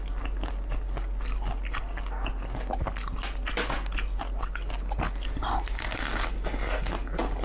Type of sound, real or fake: real